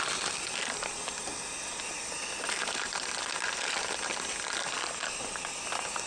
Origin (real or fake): real